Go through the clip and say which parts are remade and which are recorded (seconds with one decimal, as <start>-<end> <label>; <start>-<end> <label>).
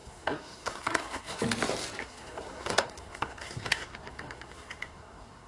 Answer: 0.0-1.4 remade; 1.4-2.0 recorded; 2.0-5.5 remade